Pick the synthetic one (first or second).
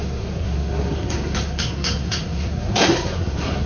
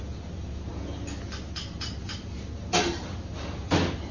first